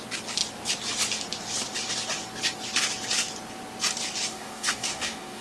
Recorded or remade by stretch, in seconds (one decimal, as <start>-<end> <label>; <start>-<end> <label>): 0.0-4.3 recorded; 4.3-5.4 remade